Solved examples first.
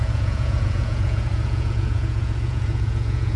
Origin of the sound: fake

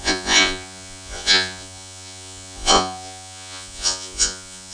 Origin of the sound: fake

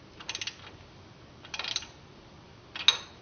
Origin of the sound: real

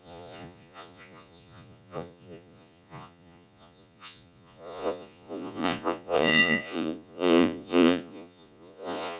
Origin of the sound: fake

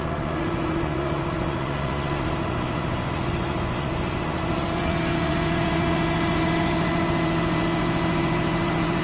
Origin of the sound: fake